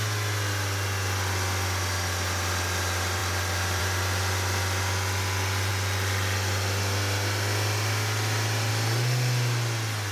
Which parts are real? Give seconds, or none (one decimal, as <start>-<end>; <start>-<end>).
0.0-3.2; 3.8-10.1